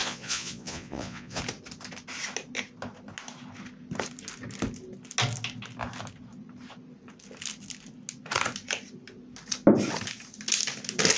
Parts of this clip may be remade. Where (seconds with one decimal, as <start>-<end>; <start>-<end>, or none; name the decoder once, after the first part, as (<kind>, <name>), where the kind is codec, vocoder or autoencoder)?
0.0-1.4 (vocoder, Vocos)